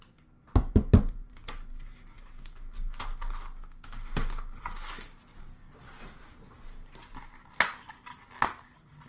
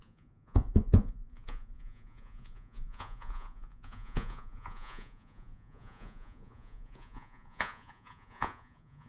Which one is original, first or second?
first